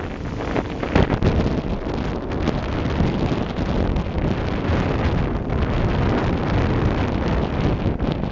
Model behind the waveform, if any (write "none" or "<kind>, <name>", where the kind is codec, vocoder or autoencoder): none